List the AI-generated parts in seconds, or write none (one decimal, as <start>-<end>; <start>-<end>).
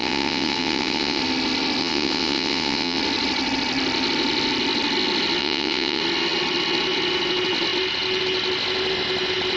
0.0-1.2; 1.8-3.0; 5.4-6.0